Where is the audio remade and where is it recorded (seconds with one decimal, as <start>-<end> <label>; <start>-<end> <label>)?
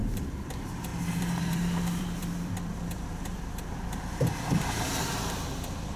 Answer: 0.0-6.0 remade